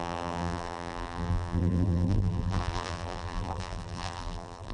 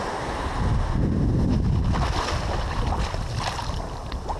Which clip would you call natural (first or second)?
second